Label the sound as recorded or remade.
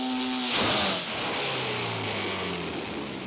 recorded